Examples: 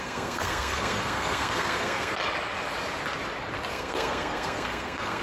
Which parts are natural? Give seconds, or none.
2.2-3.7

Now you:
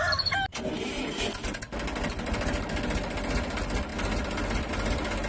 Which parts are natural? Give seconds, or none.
0.0-5.3

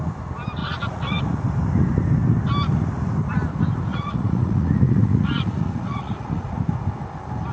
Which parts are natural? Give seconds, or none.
0.0-0.6; 1.2-3.9; 6.6-7.5

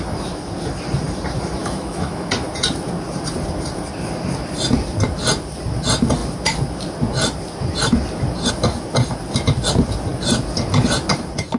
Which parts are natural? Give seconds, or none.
0.0-1.6; 2.3-11.6

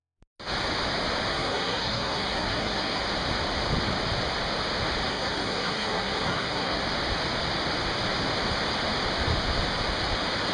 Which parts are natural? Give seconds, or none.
0.0-1.3; 3.0-5.1; 6.8-10.5

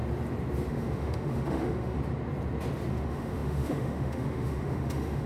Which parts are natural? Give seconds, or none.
0.0-0.7; 2.0-2.9

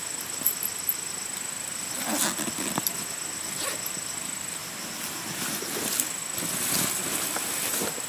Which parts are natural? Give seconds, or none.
0.0-7.0